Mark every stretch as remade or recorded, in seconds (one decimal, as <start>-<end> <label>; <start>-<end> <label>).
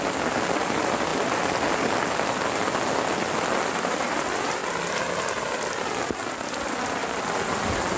0.0-1.1 remade; 1.1-3.7 recorded; 3.7-4.6 remade; 4.6-6.6 recorded; 6.6-7.0 remade; 7.0-8.0 recorded